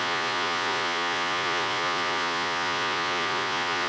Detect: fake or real fake